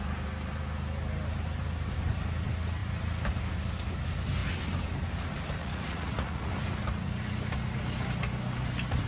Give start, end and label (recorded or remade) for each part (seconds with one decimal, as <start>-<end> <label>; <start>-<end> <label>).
0.0-5.6 recorded; 5.6-6.5 remade; 6.5-9.1 recorded